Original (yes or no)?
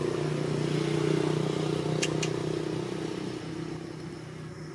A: yes